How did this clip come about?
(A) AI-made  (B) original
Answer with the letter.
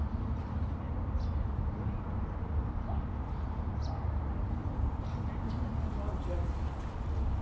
A